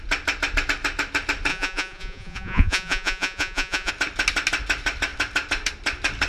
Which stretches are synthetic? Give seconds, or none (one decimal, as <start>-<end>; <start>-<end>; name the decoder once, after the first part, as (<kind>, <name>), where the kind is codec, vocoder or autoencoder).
1.5-3.9 (vocoder, Vocos)